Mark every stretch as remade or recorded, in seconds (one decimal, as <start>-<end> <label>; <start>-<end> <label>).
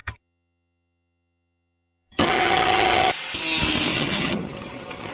0.0-3.1 remade; 3.1-3.9 recorded; 3.9-5.1 remade